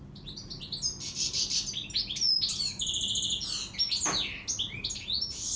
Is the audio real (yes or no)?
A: yes